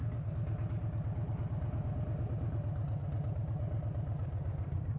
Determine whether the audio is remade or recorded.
recorded